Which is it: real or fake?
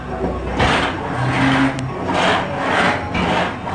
real